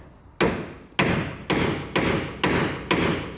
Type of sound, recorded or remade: recorded